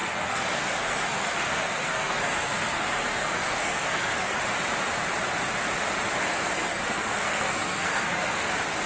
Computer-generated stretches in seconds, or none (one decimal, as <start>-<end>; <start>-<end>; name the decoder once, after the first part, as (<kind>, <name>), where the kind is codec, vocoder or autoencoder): 0.0-4.4 (codec, SNAC); 6.3-8.5

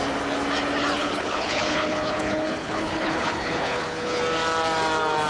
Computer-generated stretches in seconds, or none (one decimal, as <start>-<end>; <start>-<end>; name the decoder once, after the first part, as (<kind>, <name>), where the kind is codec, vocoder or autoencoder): 1.0-4.2 (codec, HILCodec)

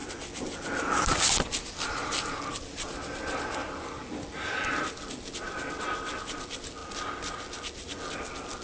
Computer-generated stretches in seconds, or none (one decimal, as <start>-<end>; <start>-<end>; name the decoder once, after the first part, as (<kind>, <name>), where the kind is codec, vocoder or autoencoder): 3.6-6.2 (vocoder, BigVGAN v2)

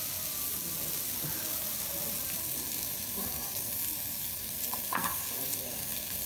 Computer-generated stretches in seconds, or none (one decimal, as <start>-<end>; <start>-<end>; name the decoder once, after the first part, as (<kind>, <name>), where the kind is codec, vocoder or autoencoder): 2.4-6.3 (codec, SNAC)